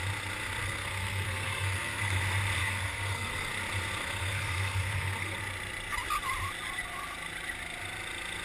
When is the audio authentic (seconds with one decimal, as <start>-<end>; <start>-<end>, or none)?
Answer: 0.0-0.6; 2.2-2.6; 3.5-4.0; 5.4-8.4